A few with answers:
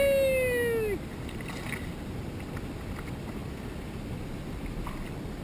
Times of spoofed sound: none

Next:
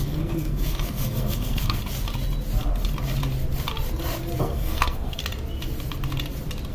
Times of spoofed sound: 0.0-1.8; 4.4-5.2

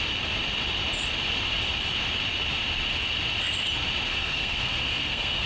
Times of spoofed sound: 4.1-5.5

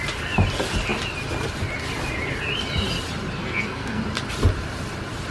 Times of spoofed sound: 3.4-4.0

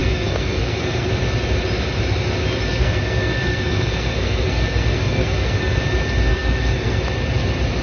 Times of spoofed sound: 0.0-1.1; 2.7-5.8; 6.3-7.0

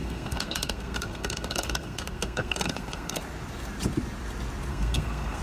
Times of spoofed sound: 0.0-3.2; 4.7-5.4

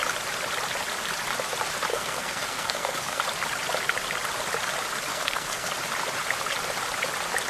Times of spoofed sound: 1.9-3.2; 5.1-5.7

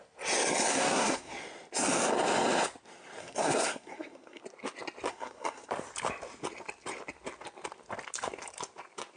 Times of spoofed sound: 0.7-1.3; 3.2-4.4; 5.1-5.7